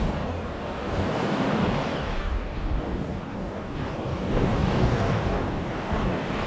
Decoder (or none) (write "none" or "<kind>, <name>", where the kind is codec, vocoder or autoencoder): codec, DAC